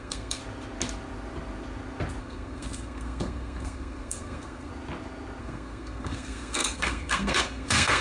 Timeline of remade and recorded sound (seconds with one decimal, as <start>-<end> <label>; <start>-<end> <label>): 0.0-0.4 remade; 0.4-2.2 recorded; 2.2-4.7 remade; 4.7-5.4 recorded; 5.4-8.0 remade